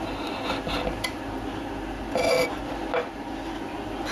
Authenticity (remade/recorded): recorded